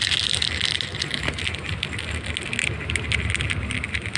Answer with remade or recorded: recorded